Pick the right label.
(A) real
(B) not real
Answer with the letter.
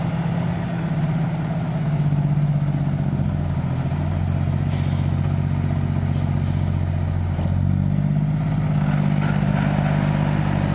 A